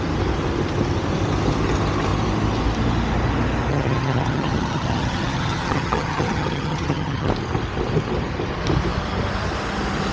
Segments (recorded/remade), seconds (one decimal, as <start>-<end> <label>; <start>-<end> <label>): 0.0-3.7 recorded; 3.7-7.3 remade; 7.3-10.1 recorded